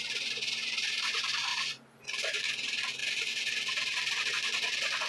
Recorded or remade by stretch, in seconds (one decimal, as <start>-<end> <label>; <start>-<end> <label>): 0.0-1.5 recorded; 1.5-2.0 remade; 2.0-5.1 recorded